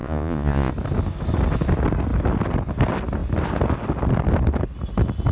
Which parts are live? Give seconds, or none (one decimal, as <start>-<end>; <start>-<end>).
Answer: 0.7-5.3